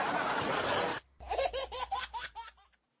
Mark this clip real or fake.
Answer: fake